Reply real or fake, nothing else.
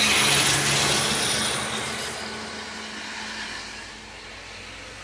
real